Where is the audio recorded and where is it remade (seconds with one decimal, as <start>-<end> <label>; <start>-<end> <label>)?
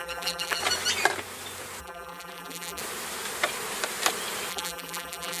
0.0-0.6 remade; 0.6-1.8 recorded; 1.8-2.8 remade; 2.8-4.5 recorded; 4.5-5.4 remade